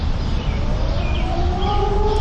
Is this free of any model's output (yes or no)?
no